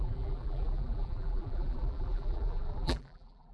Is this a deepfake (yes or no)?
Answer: yes